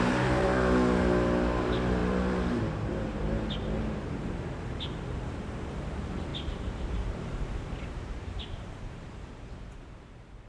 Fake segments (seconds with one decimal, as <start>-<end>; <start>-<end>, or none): 0.0-0.5; 1.6-10.5